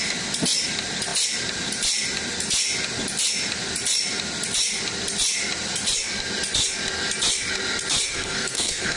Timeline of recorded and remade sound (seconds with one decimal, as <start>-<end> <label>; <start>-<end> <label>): 0.0-8.1 recorded; 8.1-9.0 remade